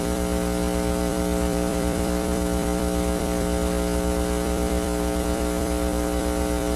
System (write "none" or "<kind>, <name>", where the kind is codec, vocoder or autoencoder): vocoder, BigVGAN v2